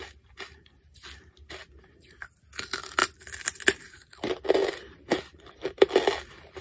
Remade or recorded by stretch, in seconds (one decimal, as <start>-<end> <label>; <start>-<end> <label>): 0.0-6.6 recorded